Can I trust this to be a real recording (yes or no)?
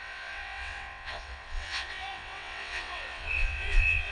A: no